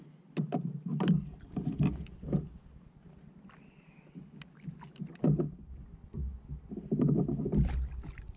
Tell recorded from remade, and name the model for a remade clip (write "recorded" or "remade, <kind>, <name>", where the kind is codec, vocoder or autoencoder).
recorded